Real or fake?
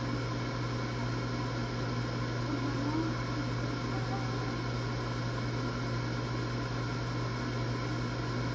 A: real